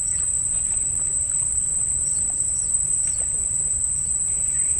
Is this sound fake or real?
fake